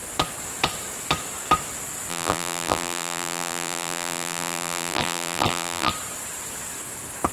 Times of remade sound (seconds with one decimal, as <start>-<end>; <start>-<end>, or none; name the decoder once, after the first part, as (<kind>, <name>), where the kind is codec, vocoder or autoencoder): 2.1-5.9 (vocoder, BigVGAN v2)